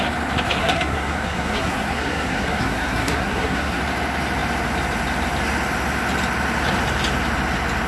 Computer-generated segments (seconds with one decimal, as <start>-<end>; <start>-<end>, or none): 0.6-3.8